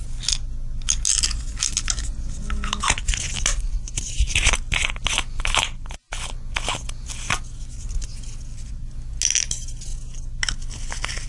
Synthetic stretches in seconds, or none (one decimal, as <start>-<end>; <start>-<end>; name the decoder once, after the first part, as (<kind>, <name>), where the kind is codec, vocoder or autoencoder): none